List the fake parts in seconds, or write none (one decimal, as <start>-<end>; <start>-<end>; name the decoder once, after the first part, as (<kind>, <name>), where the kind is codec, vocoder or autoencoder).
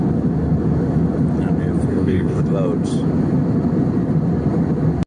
1.9-2.4 (codec, DAC)